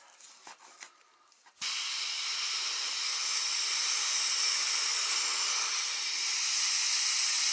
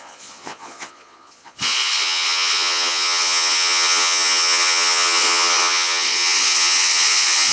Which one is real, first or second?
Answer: first